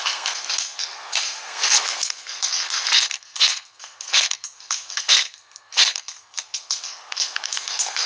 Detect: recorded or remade remade